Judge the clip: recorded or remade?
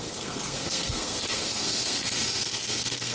remade